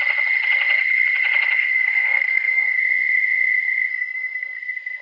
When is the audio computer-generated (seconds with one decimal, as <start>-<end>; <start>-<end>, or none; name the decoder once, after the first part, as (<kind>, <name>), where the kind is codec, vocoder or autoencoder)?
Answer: 1.6-2.8 (codec, SNAC); 3.9-4.6